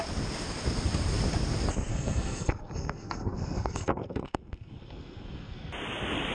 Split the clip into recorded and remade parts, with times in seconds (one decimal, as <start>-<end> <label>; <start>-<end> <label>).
0.0-1.9 recorded; 1.9-5.7 remade; 5.7-6.3 recorded